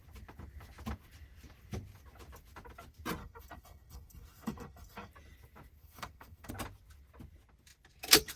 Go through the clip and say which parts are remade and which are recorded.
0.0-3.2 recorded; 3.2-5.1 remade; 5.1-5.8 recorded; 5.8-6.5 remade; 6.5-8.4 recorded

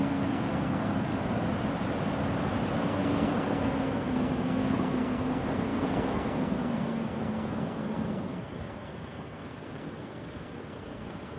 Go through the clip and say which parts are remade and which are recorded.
0.0-1.1 remade; 1.1-2.8 recorded; 2.8-11.4 remade

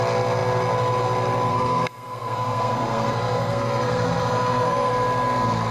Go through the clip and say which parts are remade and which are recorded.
0.0-1.5 recorded; 1.5-4.9 remade; 4.9-5.7 recorded